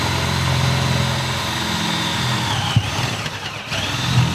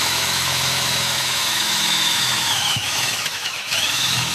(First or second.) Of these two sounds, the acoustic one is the first